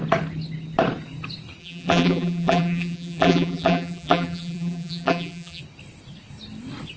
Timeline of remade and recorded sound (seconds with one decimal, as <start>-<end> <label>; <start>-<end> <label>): 0.0-1.6 recorded; 1.6-5.6 remade; 5.6-7.0 recorded